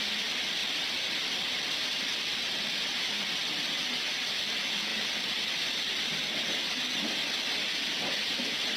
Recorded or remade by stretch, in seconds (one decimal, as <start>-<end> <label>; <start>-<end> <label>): 0.0-0.6 recorded; 0.6-3.9 remade; 3.9-4.9 recorded; 4.9-8.8 remade